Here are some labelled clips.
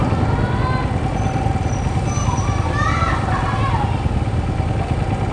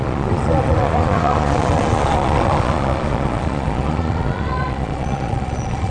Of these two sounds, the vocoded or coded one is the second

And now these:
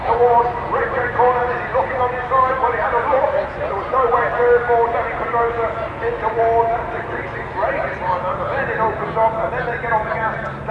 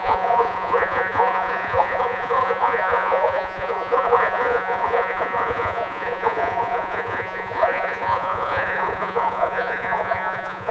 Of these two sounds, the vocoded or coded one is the second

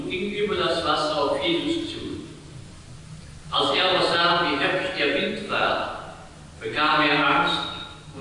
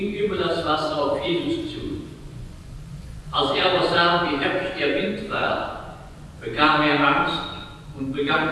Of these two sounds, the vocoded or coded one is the second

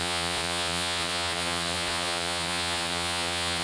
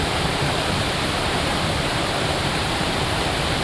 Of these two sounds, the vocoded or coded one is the first